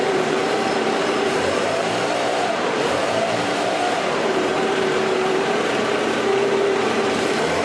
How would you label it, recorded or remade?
remade